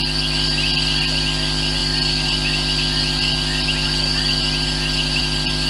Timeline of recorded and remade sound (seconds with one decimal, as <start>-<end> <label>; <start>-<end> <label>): 0.0-5.7 recorded